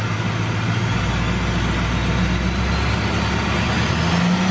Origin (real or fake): real